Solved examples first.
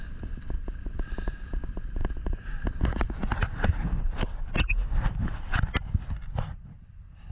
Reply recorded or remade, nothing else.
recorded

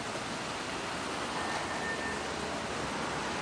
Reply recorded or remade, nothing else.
recorded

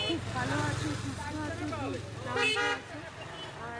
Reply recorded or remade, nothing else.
recorded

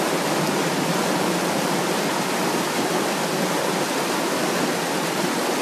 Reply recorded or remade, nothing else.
recorded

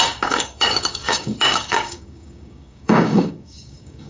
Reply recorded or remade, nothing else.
remade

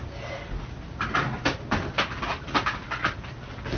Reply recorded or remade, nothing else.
recorded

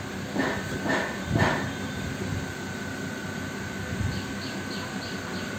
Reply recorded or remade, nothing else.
remade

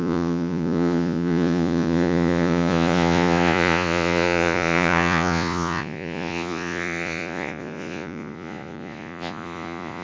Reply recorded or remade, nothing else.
remade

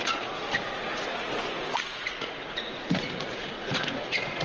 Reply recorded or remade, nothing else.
remade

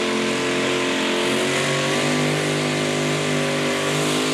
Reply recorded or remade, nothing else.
recorded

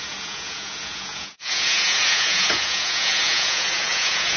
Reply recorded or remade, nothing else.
remade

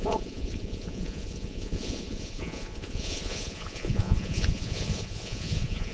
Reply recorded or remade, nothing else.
remade